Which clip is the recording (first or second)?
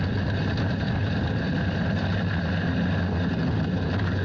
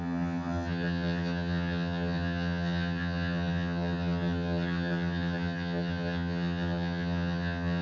first